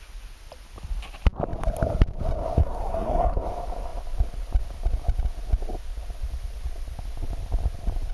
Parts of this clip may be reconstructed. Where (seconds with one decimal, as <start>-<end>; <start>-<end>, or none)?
2.6-3.4